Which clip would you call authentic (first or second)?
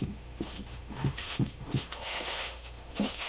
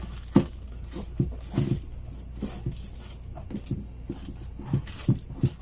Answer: second